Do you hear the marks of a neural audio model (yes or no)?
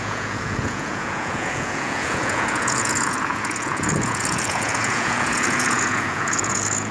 yes